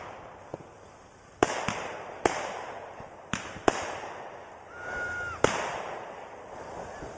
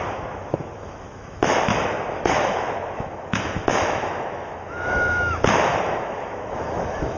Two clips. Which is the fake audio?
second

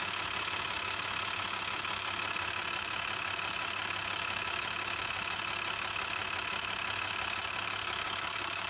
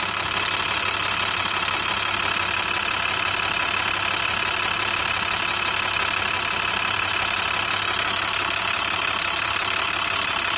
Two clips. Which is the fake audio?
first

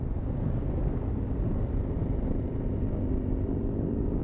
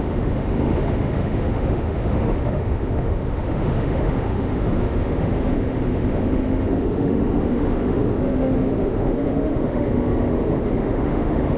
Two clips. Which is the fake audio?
second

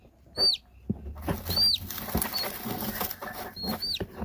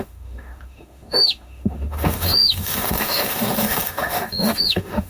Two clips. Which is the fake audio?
second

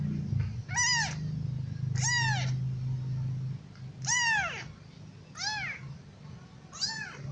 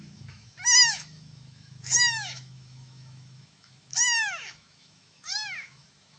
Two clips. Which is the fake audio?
second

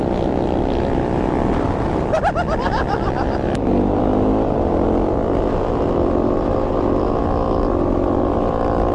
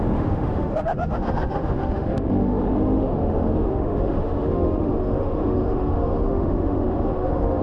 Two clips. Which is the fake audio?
second